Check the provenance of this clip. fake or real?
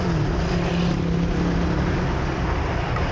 real